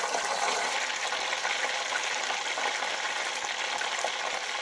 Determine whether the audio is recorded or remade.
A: recorded